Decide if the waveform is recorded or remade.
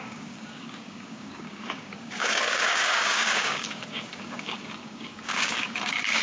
remade